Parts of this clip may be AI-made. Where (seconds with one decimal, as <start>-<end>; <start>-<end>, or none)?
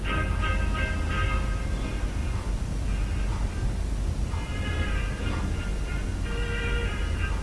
2.2-3.0